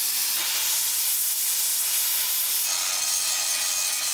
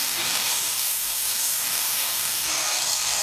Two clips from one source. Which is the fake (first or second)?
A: second